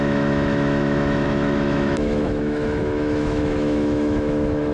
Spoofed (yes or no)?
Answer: yes